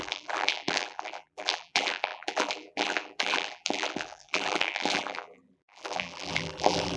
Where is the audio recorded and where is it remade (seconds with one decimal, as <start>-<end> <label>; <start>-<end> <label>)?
0.0-7.0 remade